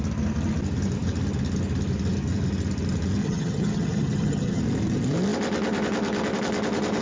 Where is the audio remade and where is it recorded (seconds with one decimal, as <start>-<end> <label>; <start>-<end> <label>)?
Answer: 0.0-3.2 recorded; 3.2-4.6 remade; 4.6-7.0 recorded